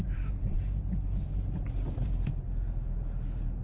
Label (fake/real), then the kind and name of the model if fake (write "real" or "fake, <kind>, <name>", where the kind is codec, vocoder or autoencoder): fake, vocoder, BigVGAN v2